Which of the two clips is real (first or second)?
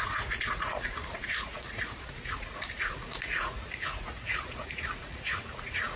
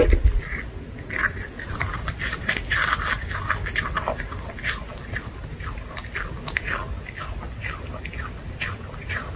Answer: second